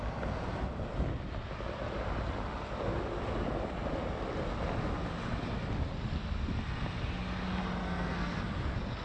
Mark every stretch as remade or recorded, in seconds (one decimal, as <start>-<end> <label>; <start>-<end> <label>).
0.0-7.8 recorded; 7.8-8.4 remade; 8.4-9.0 recorded